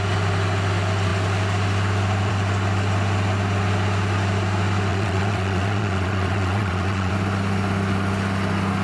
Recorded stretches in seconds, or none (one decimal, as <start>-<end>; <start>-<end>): 0.0-4.9; 7.1-8.8